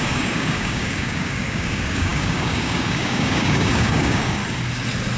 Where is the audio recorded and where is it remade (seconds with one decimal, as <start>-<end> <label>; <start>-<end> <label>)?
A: 0.0-4.4 remade; 4.4-5.2 recorded